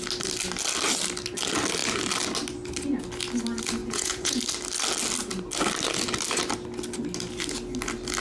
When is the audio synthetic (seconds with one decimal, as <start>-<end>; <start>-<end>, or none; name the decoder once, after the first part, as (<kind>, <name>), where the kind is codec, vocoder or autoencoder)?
3.8-4.4 (vocoder, Vocos)